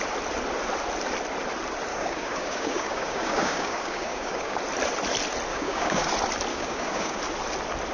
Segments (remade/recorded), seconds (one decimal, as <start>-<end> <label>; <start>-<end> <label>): 0.0-1.9 recorded; 1.9-4.6 remade; 4.6-5.5 recorded; 5.5-6.1 remade; 6.1-6.5 recorded; 6.5-7.2 remade; 7.2-7.9 recorded